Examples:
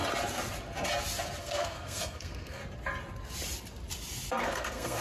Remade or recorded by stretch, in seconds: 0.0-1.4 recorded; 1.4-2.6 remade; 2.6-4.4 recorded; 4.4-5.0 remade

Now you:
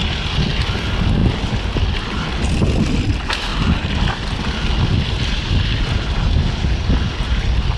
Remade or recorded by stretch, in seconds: 0.0-7.8 recorded

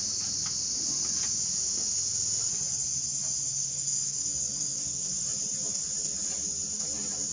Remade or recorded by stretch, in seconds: 0.0-3.5 recorded; 3.5-5.2 remade; 5.2-7.3 recorded